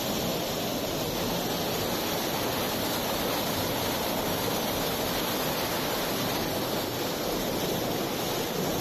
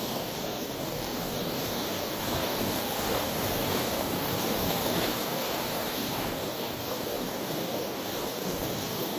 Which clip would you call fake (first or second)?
second